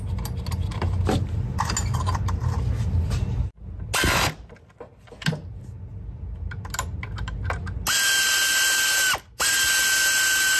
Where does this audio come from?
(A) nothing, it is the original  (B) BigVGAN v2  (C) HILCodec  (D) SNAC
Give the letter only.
A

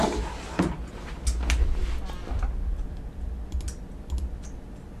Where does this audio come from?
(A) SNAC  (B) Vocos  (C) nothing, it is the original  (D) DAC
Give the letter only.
C